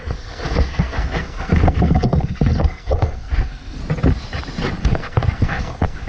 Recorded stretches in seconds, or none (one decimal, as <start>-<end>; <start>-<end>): 3.8-4.8

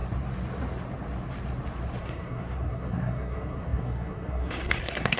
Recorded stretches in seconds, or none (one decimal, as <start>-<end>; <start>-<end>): 0.0-2.0

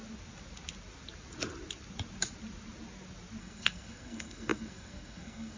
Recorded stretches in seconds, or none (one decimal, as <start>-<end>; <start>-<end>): 0.0-3.4

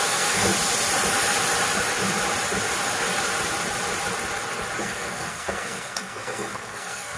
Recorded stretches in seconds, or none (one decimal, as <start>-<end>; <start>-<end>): 0.5-4.8

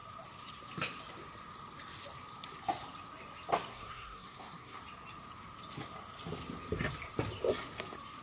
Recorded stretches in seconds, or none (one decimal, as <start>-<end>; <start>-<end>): 0.0-3.7; 4.8-8.2